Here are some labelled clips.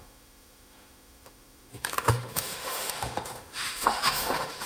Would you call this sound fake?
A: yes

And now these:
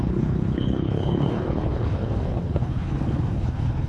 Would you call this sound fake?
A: yes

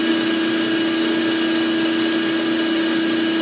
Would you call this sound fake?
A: no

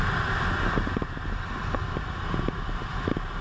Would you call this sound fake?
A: no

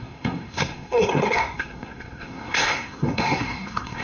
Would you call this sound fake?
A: yes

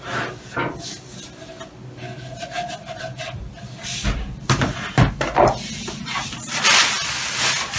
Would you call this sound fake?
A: no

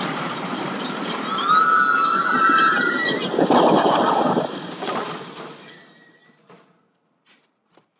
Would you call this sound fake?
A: yes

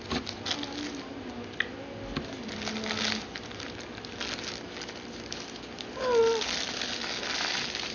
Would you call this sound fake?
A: no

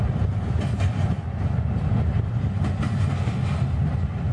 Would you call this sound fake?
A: no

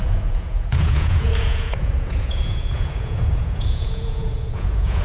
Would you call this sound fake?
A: yes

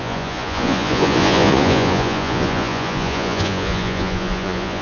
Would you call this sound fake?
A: yes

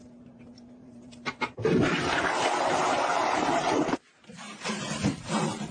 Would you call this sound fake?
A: yes